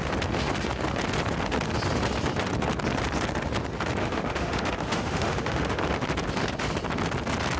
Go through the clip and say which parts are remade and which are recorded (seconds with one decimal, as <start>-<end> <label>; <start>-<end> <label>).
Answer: 0.0-4.0 recorded; 4.0-5.8 remade; 5.8-7.6 recorded